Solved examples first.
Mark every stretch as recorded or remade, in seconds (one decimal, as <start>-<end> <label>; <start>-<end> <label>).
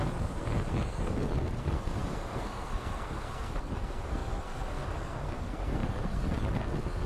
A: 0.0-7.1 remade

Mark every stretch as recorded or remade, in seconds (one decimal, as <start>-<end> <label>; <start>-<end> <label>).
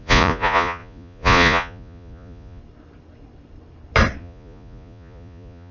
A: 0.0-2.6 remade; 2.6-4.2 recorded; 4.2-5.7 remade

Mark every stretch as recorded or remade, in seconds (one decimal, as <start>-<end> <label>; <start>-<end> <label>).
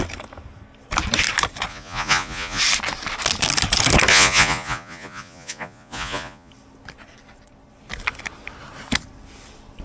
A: 0.0-1.7 recorded; 1.7-2.6 remade; 2.6-4.1 recorded; 4.1-6.5 remade; 6.5-9.8 recorded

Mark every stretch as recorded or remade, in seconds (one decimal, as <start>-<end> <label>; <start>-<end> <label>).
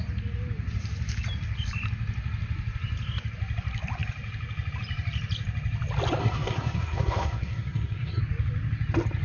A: 0.0-6.2 recorded; 6.2-8.2 remade; 8.2-9.2 recorded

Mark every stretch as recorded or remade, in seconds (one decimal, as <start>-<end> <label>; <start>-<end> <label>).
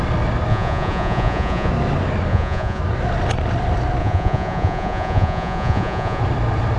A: 0.0-0.5 recorded; 0.5-1.7 remade; 1.7-2.3 recorded; 2.3-2.8 remade; 2.8-4.0 recorded; 4.0-6.2 remade; 6.2-6.8 recorded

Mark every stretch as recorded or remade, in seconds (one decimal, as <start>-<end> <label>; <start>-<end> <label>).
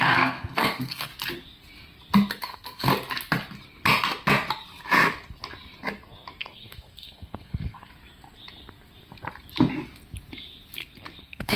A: 0.0-1.1 remade; 1.1-2.4 recorded; 2.4-2.9 remade; 2.9-6.4 recorded; 6.4-7.9 remade; 7.9-11.2 recorded; 11.2-11.6 remade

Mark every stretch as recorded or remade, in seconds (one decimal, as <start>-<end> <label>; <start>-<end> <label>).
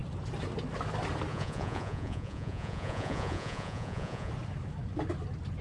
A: 0.0-1.3 recorded; 1.3-4.3 remade; 4.3-5.6 recorded